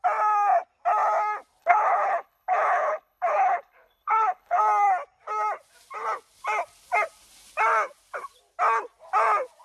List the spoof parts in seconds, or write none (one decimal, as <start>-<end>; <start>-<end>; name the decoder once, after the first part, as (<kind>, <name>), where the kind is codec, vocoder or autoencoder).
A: 1.6-4.6 (codec, HILCodec)